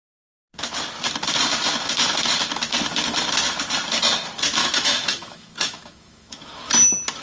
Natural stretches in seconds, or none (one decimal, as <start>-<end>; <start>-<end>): 0.0-4.6; 6.7-7.2